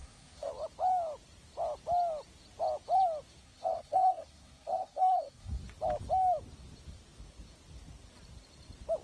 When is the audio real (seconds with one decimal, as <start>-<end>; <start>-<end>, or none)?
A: 0.5-3.4; 5.6-9.0